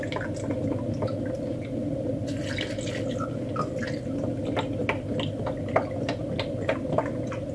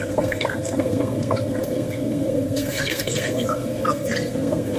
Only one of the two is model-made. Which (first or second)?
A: second